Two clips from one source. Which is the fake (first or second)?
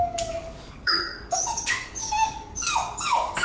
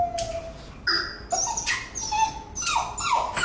first